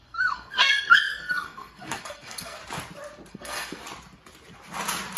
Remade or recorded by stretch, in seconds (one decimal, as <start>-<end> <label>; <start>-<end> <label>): 0.0-2.6 remade; 2.6-3.3 recorded; 3.3-3.8 remade; 3.8-5.2 recorded